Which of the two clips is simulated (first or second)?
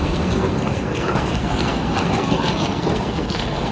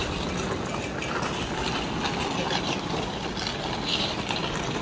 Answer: first